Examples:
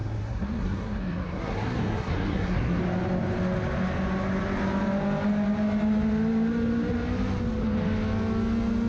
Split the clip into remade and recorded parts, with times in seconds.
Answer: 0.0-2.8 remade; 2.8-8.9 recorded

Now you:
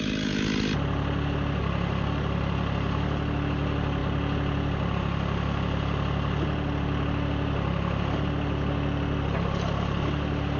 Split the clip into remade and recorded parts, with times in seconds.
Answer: 0.0-10.6 recorded